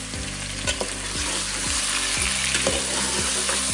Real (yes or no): yes